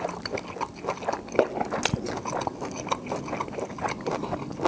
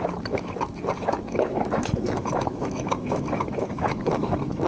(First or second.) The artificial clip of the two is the second